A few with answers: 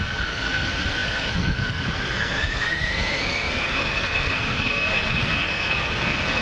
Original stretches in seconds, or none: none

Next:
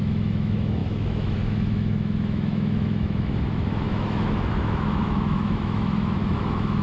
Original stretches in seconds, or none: none

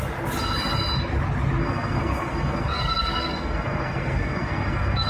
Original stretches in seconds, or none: 0.0-1.6

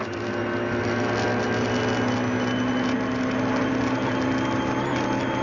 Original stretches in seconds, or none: 0.0-5.4

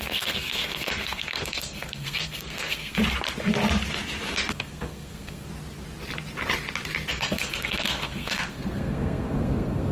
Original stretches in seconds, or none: 3.0-4.5; 5.5-7.1